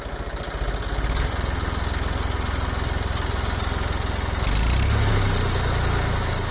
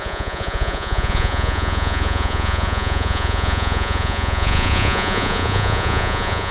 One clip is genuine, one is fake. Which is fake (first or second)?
second